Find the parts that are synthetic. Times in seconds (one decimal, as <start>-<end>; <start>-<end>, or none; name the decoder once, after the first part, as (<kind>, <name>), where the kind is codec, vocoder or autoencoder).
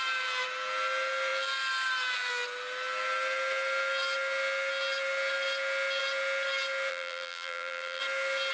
6.9-8.0 (vocoder, BigVGAN v2)